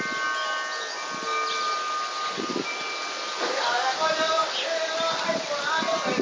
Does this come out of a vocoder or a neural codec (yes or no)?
no